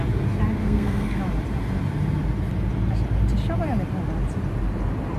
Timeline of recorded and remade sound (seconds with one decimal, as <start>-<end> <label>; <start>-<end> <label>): 0.0-0.6 recorded; 0.6-1.2 remade; 1.2-5.2 recorded